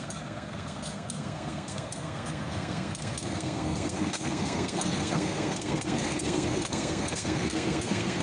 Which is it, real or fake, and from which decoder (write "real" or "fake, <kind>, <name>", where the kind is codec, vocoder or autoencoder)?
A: fake, codec, SNAC